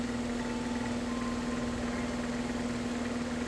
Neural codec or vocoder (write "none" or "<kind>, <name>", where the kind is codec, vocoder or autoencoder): none